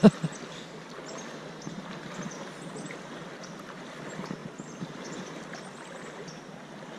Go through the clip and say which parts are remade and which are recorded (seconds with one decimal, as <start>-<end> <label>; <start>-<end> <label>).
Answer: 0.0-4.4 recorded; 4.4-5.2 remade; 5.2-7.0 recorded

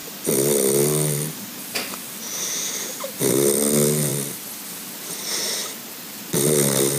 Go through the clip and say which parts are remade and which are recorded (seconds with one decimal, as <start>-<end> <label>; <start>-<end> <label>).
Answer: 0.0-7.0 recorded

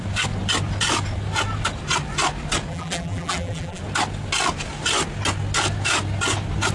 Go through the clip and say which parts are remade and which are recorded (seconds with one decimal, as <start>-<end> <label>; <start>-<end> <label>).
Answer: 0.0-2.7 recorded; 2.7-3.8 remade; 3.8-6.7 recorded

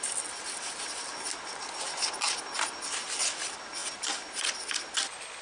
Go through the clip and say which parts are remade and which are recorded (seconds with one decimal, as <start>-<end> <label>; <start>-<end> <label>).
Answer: 0.0-5.4 recorded

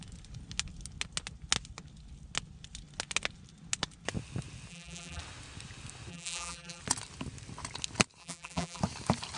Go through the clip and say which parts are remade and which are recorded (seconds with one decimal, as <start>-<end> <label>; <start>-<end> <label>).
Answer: 0.0-4.7 recorded; 4.7-5.2 remade; 5.2-6.1 recorded; 6.1-6.8 remade; 6.8-8.2 recorded; 8.2-8.8 remade; 8.8-9.4 recorded